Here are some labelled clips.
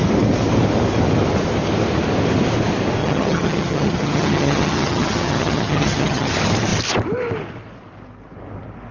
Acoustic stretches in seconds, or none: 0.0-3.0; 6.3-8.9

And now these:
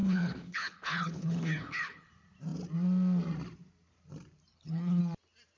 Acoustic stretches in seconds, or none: 2.1-4.5; 5.0-5.6